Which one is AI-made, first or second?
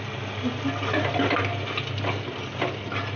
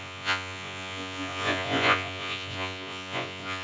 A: second